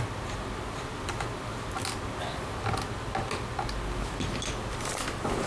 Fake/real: real